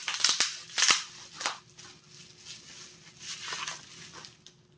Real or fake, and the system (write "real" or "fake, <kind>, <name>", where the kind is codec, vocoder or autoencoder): real